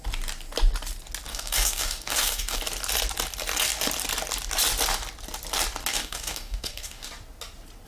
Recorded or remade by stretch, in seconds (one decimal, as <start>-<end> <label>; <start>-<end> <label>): 0.0-1.3 recorded; 1.3-2.6 remade; 2.6-5.9 recorded; 5.9-7.1 remade; 7.1-7.9 recorded